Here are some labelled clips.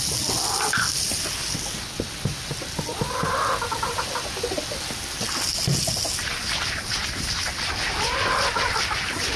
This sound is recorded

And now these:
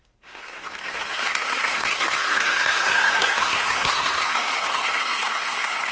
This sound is remade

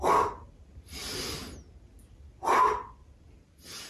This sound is recorded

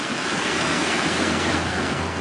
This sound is remade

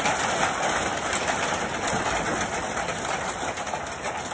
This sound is recorded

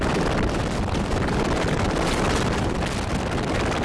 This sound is recorded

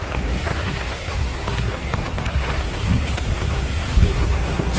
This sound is remade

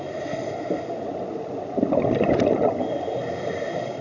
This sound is recorded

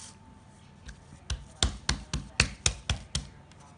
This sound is recorded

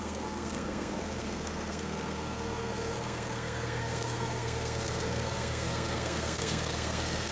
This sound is remade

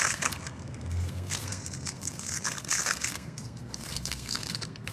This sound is remade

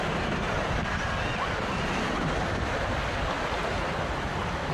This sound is recorded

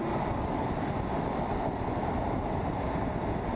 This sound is recorded